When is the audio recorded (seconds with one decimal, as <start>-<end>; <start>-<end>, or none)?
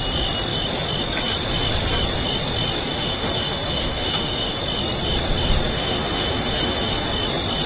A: 0.0-2.9; 4.6-5.7; 7.1-7.7